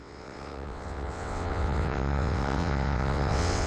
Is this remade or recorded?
remade